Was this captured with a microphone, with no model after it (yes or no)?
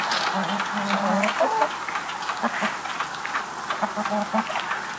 yes